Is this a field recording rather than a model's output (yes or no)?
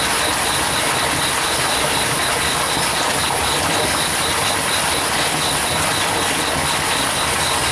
yes